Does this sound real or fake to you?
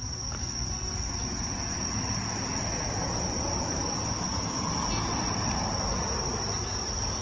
real